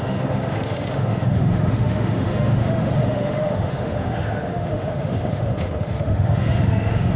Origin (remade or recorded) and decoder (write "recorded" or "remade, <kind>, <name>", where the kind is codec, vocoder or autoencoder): remade, autoencoder, DAC-VAE